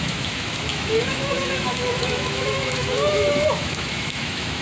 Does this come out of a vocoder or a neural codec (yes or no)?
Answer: yes